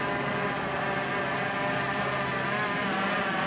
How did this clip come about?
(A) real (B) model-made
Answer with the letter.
A